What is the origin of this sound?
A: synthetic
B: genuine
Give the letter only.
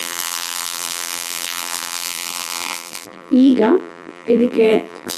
A